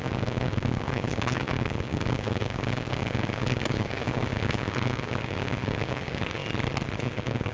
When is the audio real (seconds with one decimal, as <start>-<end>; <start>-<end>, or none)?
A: 6.4-7.0